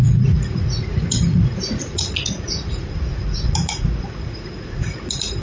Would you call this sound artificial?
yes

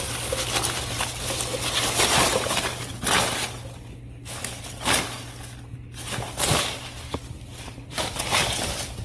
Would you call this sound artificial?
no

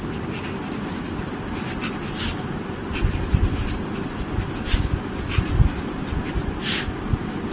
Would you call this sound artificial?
no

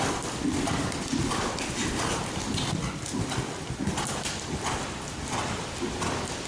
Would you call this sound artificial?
no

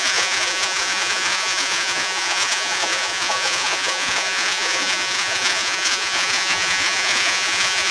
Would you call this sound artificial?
yes